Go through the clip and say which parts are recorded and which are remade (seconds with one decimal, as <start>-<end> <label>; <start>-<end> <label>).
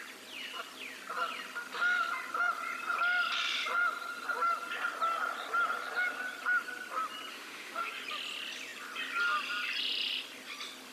0.0-7.3 recorded; 7.3-7.9 remade; 7.9-10.9 recorded